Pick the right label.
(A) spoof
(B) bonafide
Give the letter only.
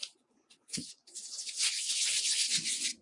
A